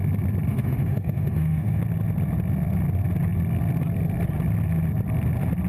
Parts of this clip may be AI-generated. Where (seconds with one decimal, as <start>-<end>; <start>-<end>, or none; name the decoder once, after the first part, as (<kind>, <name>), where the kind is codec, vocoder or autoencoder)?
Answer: 0.5-1.8 (autoencoder, DAC-VAE)